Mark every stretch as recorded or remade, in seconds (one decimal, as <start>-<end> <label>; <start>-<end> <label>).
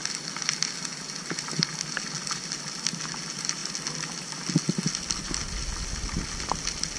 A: 0.0-7.0 recorded